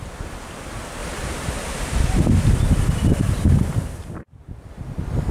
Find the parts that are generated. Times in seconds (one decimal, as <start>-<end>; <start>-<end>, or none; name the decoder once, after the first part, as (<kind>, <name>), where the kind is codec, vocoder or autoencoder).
1.0-2.0 (vocoder, BigVGAN v2)